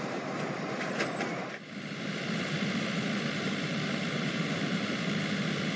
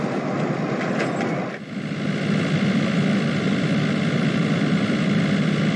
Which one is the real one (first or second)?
second